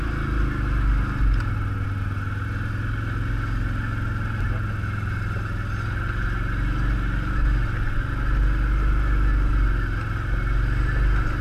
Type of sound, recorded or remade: recorded